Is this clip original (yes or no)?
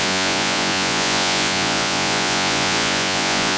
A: no